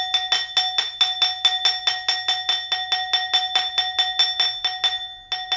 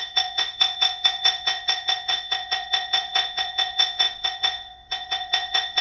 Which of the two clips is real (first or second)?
first